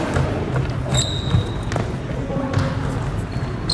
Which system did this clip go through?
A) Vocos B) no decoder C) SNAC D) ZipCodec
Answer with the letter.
B